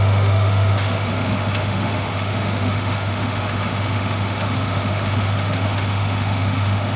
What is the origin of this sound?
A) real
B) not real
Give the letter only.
B